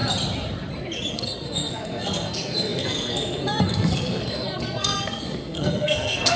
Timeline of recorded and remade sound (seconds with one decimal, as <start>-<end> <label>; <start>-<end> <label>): 0.0-1.1 recorded; 1.1-6.4 remade